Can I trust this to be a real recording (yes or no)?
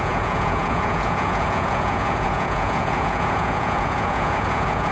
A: no